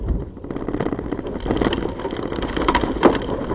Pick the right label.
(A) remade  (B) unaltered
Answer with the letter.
B